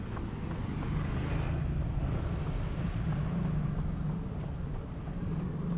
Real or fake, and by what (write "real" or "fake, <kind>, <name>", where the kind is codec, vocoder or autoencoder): real